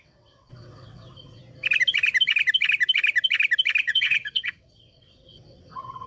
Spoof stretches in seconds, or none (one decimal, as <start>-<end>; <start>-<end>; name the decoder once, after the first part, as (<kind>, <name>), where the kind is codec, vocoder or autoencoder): 0.0-1.4 (vocoder, WaveNeXt); 3.8-6.1